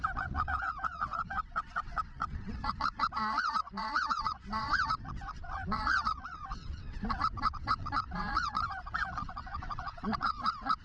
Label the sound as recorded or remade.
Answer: remade